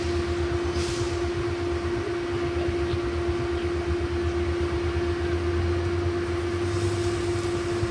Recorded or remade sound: recorded